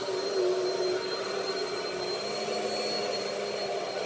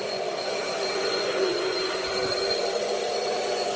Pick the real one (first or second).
first